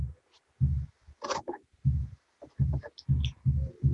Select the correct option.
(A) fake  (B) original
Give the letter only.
B